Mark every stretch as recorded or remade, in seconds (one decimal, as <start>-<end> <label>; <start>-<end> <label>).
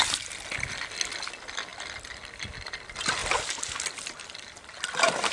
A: 0.0-1.7 recorded; 1.7-2.7 remade; 2.7-5.3 recorded